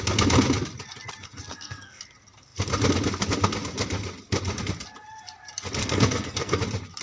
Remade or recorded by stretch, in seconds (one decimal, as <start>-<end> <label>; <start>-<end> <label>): 0.0-1.5 recorded; 1.5-2.0 remade; 2.0-5.8 recorded; 5.8-6.6 remade; 6.6-7.0 recorded